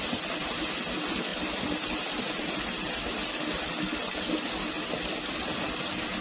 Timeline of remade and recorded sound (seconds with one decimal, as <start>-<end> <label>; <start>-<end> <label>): 0.0-1.3 recorded; 1.3-2.5 remade; 2.5-6.2 recorded